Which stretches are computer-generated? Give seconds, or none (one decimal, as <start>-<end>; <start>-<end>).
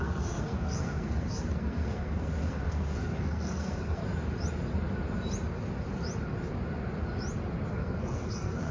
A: 0.0-4.0; 7.7-8.7